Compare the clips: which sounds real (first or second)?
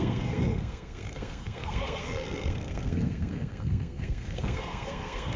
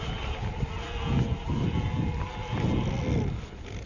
second